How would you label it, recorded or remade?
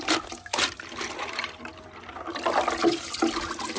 recorded